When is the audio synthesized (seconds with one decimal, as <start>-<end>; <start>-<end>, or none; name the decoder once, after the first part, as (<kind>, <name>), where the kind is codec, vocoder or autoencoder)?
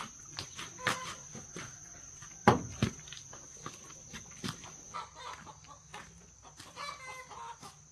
1.2-2.0 (vocoder, Vocos)